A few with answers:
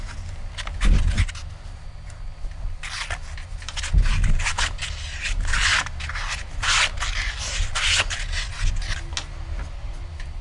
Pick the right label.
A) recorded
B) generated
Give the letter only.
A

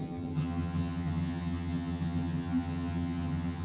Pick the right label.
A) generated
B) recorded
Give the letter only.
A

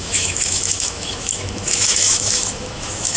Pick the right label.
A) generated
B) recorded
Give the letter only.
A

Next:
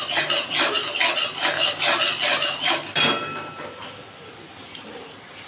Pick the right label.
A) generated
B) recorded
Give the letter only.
B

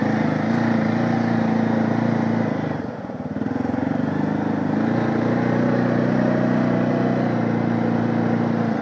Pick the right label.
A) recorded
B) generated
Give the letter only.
A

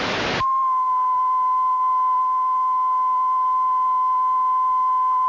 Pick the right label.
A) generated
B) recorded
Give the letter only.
B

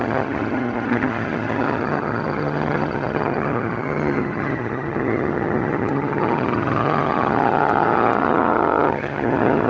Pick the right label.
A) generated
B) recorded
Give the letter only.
A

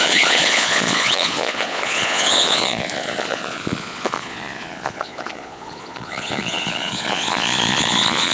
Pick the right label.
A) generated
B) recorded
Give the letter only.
A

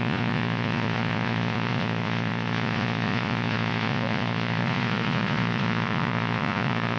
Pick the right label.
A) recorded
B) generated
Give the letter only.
B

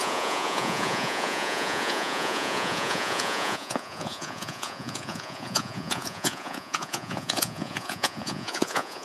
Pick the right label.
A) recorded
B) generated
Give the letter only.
B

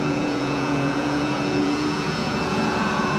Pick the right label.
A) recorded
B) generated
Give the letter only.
B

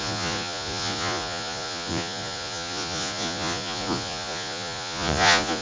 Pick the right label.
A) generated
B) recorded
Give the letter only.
A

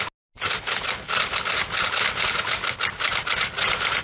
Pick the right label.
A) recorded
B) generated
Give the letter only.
A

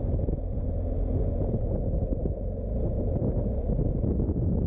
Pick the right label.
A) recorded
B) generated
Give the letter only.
A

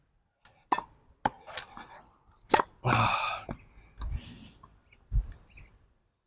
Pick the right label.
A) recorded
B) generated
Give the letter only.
A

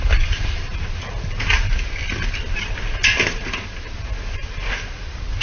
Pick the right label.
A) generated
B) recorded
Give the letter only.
B